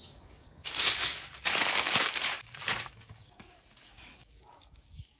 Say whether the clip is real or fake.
fake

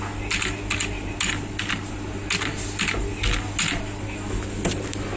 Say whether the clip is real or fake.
real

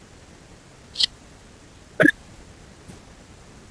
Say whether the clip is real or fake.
real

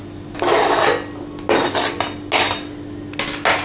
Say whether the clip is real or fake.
real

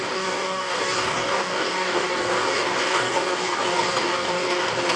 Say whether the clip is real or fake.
fake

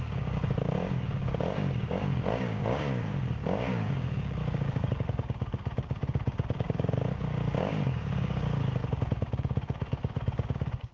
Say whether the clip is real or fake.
fake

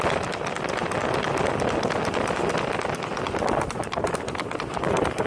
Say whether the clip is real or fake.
real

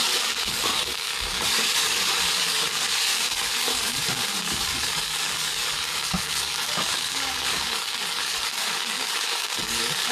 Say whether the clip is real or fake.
fake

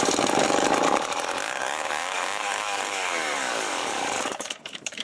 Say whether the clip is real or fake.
fake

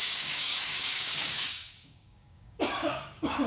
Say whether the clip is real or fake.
fake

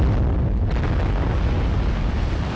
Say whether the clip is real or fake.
real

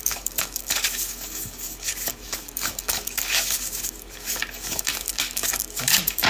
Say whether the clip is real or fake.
fake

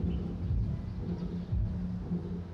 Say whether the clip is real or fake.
real